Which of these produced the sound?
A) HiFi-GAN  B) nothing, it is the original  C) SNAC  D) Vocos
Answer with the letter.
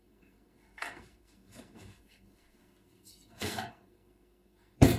C